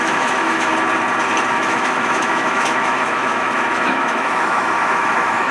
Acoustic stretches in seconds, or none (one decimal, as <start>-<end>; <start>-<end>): 0.7-1.5